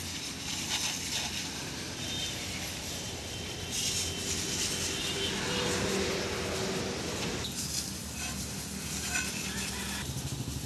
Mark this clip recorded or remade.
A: recorded